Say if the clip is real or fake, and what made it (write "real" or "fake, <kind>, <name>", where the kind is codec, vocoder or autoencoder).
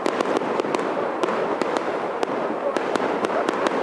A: real